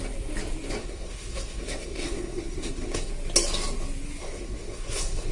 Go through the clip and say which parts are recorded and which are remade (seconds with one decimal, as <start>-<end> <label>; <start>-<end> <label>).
0.0-0.8 recorded; 0.8-3.1 remade; 3.1-4.2 recorded; 4.2-5.3 remade